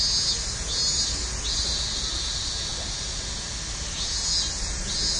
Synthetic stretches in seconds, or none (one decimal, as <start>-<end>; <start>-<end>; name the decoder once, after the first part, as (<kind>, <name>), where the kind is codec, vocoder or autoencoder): none